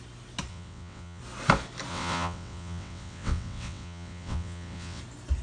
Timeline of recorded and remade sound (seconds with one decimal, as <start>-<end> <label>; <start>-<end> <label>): 0.0-0.5 recorded; 0.5-1.2 remade; 1.2-1.9 recorded; 1.9-5.0 remade; 5.0-5.4 recorded

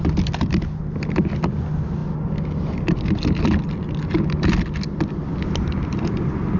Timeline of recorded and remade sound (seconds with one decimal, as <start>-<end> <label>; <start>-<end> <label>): 0.0-6.6 recorded

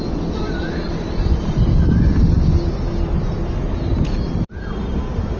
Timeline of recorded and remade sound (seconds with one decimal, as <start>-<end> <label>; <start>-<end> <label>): 0.0-5.4 recorded